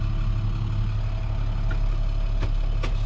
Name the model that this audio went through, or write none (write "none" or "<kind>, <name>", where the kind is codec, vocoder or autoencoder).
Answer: none